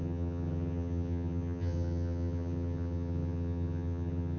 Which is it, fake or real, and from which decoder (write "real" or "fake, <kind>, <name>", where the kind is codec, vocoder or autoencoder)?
fake, vocoder, HiFi-GAN